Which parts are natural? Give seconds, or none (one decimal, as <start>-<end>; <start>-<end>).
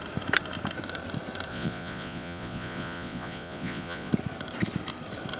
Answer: 0.0-1.5; 4.1-5.4